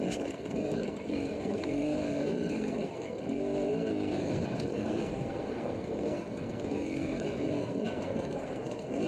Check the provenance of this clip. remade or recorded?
remade